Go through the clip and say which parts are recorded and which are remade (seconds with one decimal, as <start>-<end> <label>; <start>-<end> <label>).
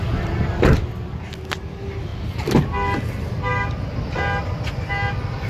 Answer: 0.0-5.5 recorded